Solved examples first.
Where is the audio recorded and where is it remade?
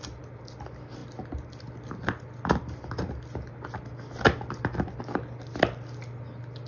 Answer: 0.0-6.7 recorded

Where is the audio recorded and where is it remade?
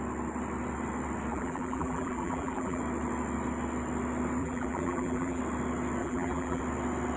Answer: 0.0-1.3 recorded; 1.3-2.8 remade; 2.8-4.4 recorded; 4.4-5.4 remade; 5.4-6.0 recorded; 6.0-6.6 remade; 6.6-7.2 recorded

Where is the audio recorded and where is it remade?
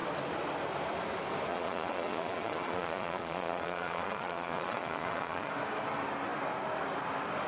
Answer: 0.0-1.5 recorded; 1.5-5.5 remade; 5.5-7.5 recorded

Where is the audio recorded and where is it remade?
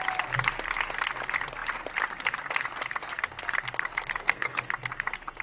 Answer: 0.0-4.1 recorded; 4.1-4.7 remade; 4.7-5.4 recorded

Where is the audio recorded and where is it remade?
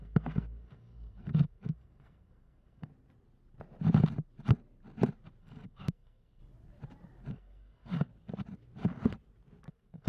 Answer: 0.0-2.9 remade; 2.9-5.4 recorded; 5.4-6.4 remade; 6.4-7.3 recorded; 7.3-8.1 remade; 8.1-9.7 recorded; 9.7-10.1 remade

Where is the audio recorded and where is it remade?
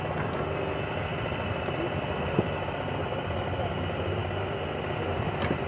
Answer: 0.0-5.7 recorded